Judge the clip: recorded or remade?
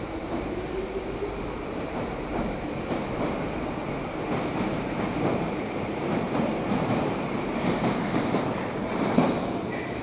remade